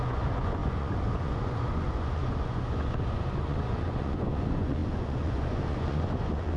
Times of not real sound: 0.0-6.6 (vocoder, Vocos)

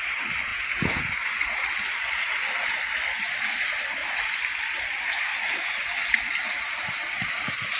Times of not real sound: 0.5-1.0 (vocoder, Vocos)

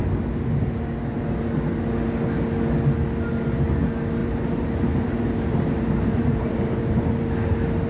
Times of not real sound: 4.2-7.0 (vocoder, BigVGAN v2)

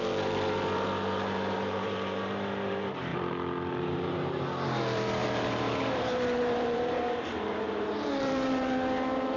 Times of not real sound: 0.0-3.1 (vocoder, BigVGAN v2); 3.7-9.4